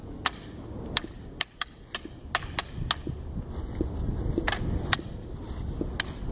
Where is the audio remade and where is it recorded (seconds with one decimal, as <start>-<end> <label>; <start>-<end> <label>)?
0.0-6.3 recorded